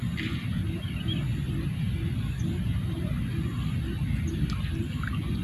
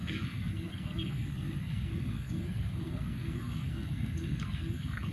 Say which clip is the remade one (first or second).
second